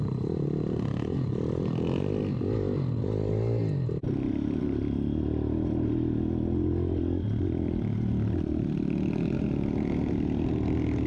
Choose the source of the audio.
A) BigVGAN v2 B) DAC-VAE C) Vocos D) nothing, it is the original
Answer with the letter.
D